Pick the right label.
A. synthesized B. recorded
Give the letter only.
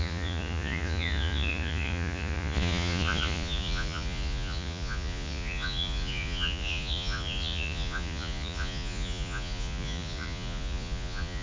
A